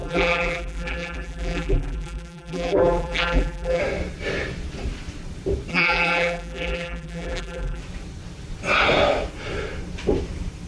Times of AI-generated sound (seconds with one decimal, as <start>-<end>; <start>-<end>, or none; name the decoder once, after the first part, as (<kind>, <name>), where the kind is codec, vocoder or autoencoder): 0.0-3.8 (vocoder, BigVGAN v2); 5.7-7.8